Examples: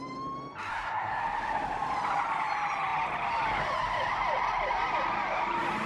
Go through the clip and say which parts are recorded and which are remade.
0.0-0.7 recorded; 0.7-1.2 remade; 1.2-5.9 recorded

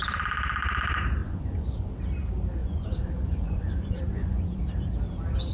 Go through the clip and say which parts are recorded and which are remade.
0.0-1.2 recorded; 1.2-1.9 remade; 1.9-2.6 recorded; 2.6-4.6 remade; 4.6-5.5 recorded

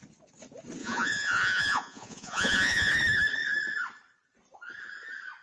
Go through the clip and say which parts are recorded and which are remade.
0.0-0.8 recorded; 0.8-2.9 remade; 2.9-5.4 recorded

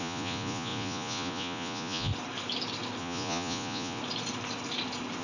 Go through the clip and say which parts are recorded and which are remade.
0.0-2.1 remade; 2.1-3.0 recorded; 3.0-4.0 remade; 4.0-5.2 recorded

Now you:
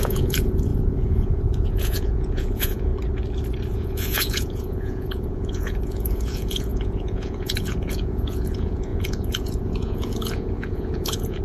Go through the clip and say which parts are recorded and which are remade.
0.0-2.9 remade; 2.9-3.7 recorded; 3.7-11.4 remade

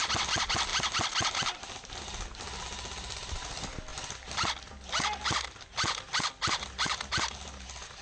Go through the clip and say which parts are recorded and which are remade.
0.0-8.0 recorded